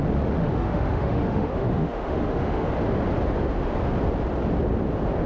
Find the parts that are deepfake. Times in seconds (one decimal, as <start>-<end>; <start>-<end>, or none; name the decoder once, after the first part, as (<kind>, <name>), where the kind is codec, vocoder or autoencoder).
0.4-2.7 (autoencoder, DAC-VAE)